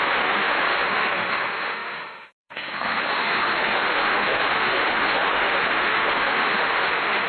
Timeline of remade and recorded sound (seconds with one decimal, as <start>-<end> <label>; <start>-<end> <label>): 0.0-7.3 remade